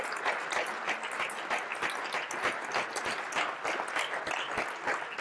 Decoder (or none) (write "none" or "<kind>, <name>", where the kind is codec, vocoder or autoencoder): none